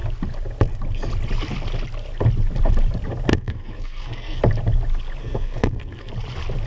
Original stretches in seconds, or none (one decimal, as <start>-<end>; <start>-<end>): 0.0-3.3; 4.4-5.2; 6.1-6.7